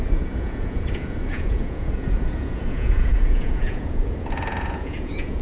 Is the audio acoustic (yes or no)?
no